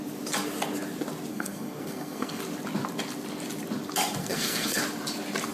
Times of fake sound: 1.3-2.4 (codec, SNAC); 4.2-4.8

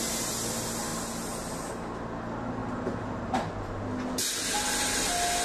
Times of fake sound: none

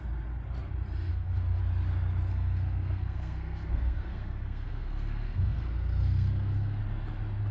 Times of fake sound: 1.1-1.6 (codec, SNAC); 2.3-6.8

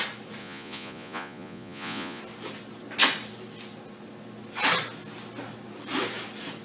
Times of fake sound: 0.4-2.2 (vocoder, Vocos)